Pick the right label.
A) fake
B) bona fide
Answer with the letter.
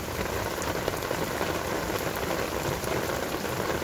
B